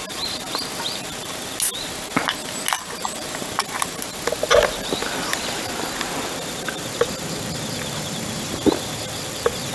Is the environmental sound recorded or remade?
recorded